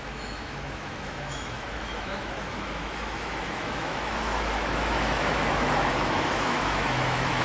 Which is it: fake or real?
fake